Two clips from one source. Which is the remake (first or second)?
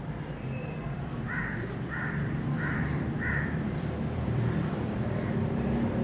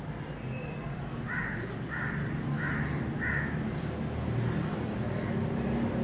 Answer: first